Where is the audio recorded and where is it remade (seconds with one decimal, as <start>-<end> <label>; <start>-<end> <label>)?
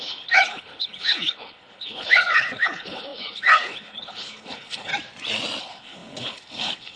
0.0-4.9 remade; 4.9-5.6 recorded; 5.6-7.0 remade